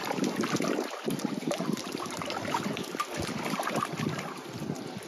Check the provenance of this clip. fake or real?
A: real